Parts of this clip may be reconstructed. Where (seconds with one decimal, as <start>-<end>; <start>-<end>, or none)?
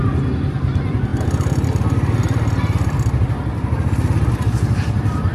none